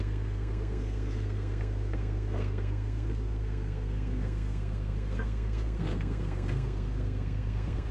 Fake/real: fake